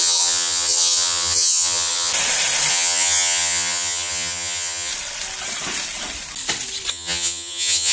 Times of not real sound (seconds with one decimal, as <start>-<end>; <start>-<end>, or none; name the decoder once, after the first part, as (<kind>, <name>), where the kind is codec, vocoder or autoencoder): 0.0-2.1 (vocoder, HiFi-GAN); 2.7-4.9; 6.9-7.9